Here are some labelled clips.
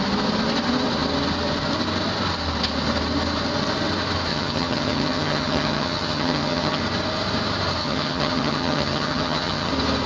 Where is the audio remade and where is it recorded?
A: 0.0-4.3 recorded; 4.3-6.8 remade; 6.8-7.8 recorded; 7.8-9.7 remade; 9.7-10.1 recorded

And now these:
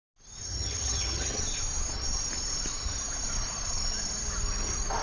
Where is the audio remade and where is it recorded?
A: 0.0-0.4 recorded; 0.4-1.4 remade; 1.4-5.0 recorded

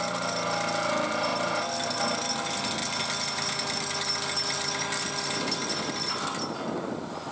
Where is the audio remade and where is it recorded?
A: 0.0-7.3 recorded

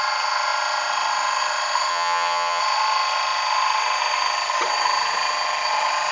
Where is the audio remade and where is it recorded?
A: 0.0-1.9 recorded; 1.9-2.6 remade; 2.6-6.1 recorded

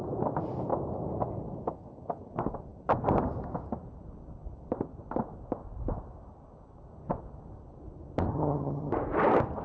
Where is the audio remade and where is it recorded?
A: 0.0-8.3 recorded; 8.3-8.9 remade; 8.9-9.6 recorded

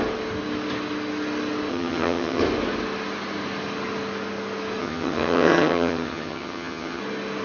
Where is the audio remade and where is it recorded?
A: 0.0-1.7 recorded; 1.7-2.4 remade; 2.4-4.8 recorded; 4.8-7.0 remade; 7.0-7.4 recorded

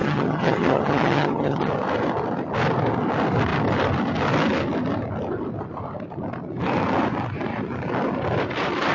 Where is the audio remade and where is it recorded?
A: 0.0-1.7 remade; 1.7-8.9 recorded